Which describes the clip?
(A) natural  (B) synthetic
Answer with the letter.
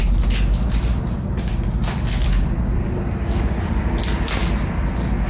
A